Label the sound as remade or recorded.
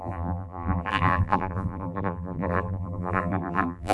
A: remade